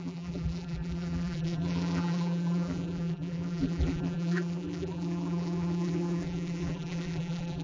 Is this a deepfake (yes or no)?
yes